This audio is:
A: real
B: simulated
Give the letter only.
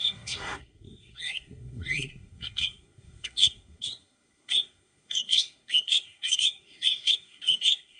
B